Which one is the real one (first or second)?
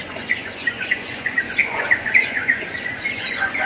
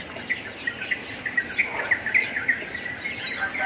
second